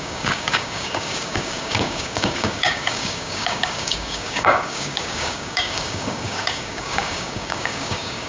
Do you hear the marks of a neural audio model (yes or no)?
yes